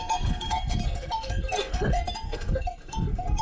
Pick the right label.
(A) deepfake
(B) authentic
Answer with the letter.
A